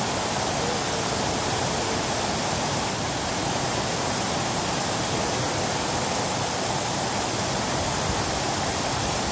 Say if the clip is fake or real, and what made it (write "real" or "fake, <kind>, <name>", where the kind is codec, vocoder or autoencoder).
real